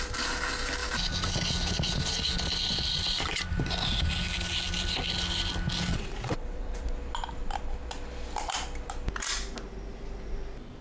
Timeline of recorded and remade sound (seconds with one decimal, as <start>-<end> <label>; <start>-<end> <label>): 0.0-5.9 recorded; 5.9-6.8 remade; 6.8-10.8 recorded